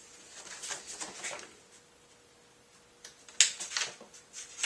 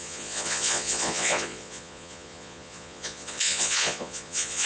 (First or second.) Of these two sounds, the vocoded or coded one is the second